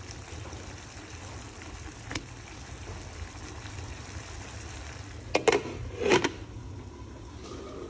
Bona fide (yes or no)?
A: yes